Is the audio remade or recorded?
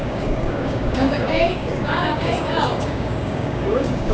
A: remade